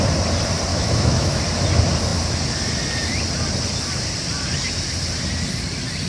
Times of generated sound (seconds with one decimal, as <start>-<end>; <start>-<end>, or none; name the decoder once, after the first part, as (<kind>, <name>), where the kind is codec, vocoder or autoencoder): 0.7-1.4 (autoencoder, DAC-VAE)

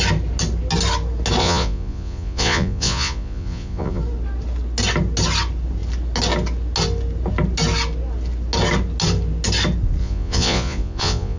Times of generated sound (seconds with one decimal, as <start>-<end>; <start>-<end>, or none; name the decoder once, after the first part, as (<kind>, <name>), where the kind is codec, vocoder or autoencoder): 1.4-4.0 (vocoder, Vocos); 10.0-11.4

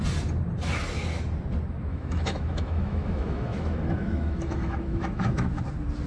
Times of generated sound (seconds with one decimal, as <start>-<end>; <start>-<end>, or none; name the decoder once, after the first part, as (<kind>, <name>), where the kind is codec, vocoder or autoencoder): 1.9-5.6 (autoencoder, DAC-VAE)

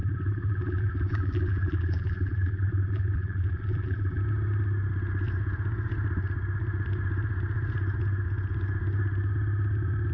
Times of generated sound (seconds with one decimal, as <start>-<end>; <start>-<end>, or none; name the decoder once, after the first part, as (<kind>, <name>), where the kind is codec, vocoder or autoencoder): 0.0-4.2 (vocoder, BigVGAN v2)

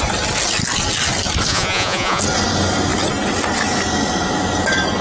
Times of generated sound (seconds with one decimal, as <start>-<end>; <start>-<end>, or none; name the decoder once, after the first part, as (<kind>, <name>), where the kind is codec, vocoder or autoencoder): 1.5-2.2 (vocoder, Vocos)